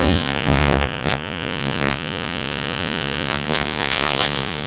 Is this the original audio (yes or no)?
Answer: no